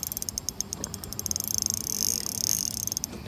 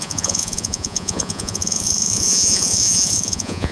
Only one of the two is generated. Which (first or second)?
second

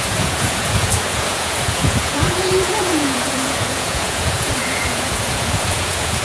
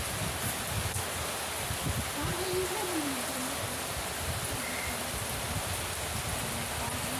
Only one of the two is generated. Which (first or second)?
first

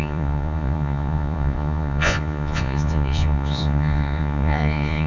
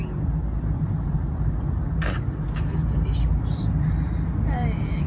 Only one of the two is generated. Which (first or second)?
first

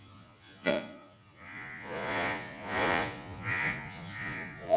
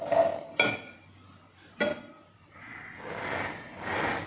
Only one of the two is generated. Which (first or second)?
first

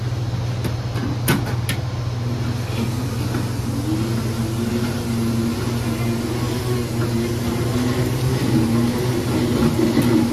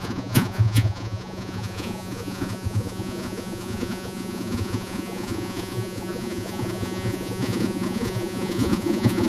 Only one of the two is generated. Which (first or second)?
second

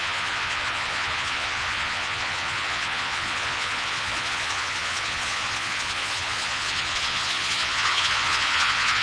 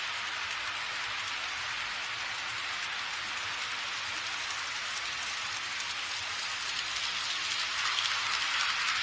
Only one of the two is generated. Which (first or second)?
first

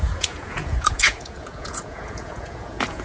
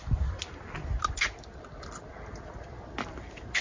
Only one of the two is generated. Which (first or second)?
first